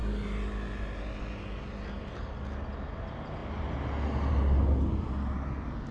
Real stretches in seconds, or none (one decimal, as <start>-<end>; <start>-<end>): 0.0-5.9